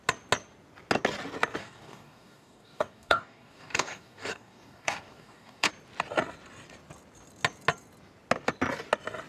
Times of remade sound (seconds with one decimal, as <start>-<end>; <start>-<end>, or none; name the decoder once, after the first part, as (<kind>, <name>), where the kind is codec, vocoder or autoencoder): 1.6-5.7 (codec, DAC)